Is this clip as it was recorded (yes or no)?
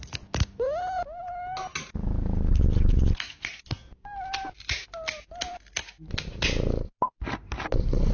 yes